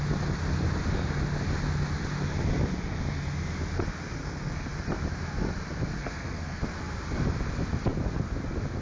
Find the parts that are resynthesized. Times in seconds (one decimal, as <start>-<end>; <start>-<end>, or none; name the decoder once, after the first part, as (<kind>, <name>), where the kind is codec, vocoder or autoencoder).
4.2-4.7 (codec, SNAC); 6.0-6.6